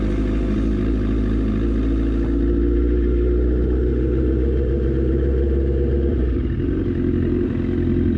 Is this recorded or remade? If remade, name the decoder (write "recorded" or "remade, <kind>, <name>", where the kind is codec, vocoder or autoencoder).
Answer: recorded